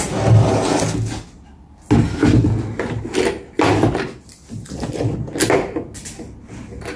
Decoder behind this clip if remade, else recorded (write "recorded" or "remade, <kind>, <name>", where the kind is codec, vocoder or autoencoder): recorded